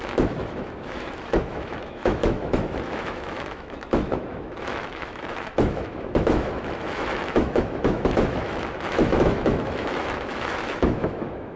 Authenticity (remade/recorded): remade